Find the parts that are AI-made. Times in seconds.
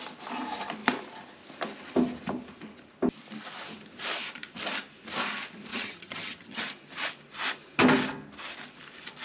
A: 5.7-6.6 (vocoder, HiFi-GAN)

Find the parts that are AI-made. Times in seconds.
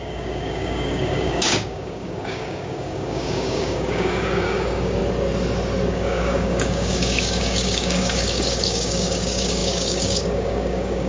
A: 0.0-5.0 (codec, DAC); 5.9-11.1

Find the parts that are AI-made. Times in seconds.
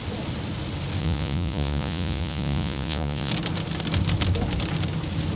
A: 1.0-3.3 (vocoder, Vocos)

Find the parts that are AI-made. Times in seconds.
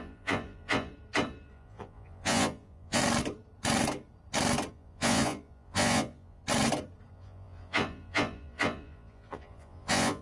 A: 0.0-0.9 (vocoder, Vocos); 1.5-3.0; 4.7-6.4; 7.1-10.2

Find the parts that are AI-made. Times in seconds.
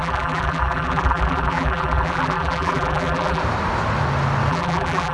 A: 0.0-3.4 (vocoder, BigVGAN v2); 4.5-5.1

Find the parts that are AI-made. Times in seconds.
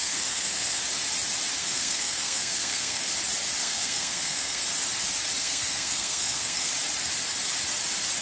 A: 0.0-0.8 (codec, SNAC); 1.6-3.1; 3.6-4.6; 5.4-6.7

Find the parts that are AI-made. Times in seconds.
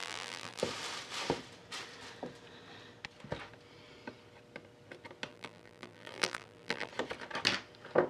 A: 0.0-0.6 (vocoder, BigVGAN v2); 5.3-6.9